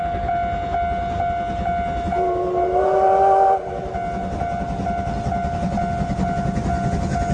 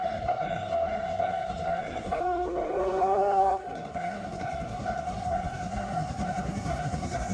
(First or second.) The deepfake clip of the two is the second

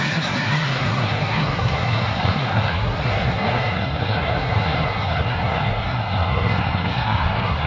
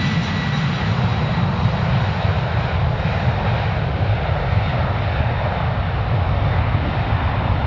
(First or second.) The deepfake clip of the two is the first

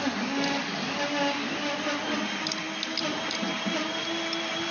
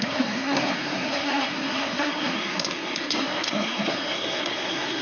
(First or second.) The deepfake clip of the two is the second